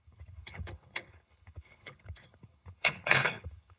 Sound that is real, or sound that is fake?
fake